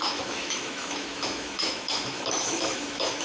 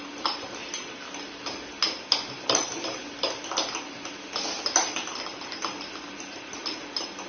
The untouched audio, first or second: second